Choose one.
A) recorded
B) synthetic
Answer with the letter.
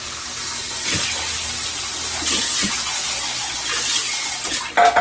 A